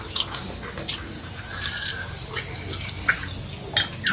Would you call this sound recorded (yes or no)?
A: yes